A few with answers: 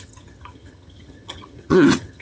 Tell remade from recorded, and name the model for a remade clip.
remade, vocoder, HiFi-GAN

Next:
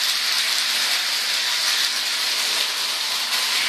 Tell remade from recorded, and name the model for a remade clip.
recorded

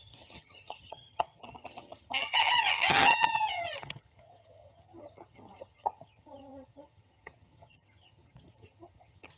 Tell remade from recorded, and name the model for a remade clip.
remade, vocoder, HiFi-GAN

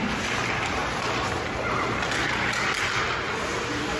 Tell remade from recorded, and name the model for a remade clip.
recorded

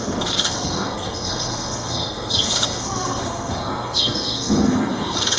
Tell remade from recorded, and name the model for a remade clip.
remade, codec, SNAC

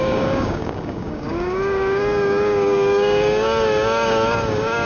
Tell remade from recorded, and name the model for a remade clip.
remade, codec, DAC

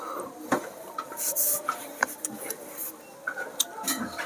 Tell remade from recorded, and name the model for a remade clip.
recorded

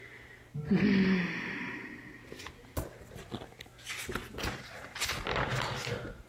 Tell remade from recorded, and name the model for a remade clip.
recorded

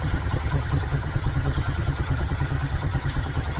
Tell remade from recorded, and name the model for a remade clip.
remade, vocoder, HiFi-GAN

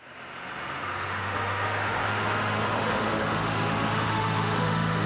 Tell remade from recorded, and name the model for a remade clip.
remade, autoencoder, DAC-VAE